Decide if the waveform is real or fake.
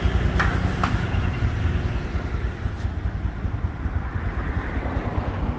real